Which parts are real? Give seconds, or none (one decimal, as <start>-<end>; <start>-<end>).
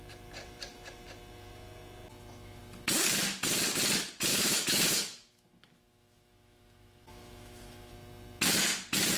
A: 0.0-4.3; 7.9-9.2